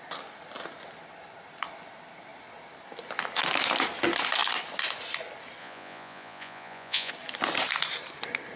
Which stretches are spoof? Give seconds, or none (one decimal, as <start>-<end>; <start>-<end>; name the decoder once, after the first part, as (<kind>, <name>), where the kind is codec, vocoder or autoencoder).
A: 5.6-7.1 (vocoder, Vocos)